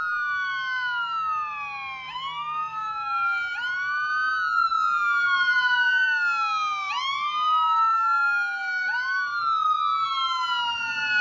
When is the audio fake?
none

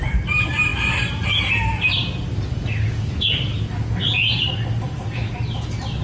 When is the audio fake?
none

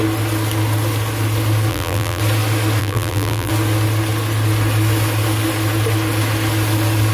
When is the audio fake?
1.7-2.2 (vocoder, BigVGAN v2); 2.8-3.5